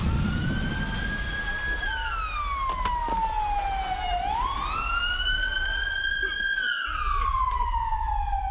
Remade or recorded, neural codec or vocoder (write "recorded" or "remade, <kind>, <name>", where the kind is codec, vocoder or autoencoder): recorded